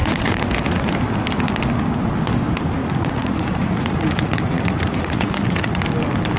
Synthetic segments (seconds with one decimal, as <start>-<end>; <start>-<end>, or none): 0.0-0.9; 2.8-5.8